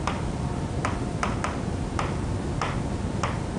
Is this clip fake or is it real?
real